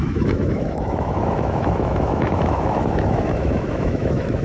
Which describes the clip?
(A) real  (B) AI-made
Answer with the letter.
B